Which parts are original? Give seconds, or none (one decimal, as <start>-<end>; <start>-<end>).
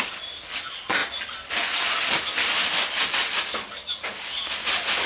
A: 0.0-5.1